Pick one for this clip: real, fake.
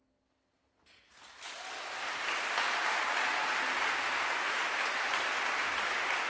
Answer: real